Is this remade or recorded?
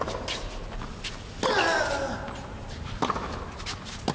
recorded